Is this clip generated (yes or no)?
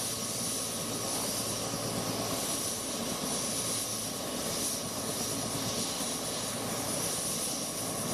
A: no